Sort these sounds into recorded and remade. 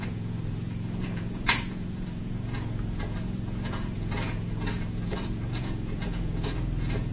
remade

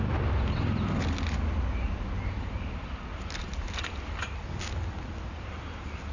recorded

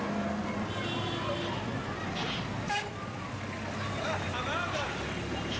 recorded